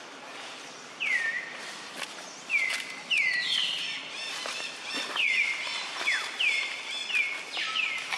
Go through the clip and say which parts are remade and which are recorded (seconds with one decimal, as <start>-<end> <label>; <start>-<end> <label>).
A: 0.0-1.1 recorded; 1.1-1.9 remade; 1.9-3.6 recorded; 3.6-7.0 remade; 7.0-8.2 recorded